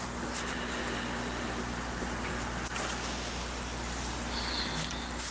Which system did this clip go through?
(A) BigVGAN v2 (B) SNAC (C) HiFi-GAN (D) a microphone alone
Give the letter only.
D